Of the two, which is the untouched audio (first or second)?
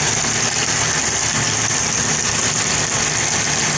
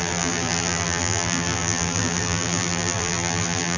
first